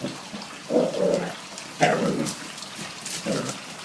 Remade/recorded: recorded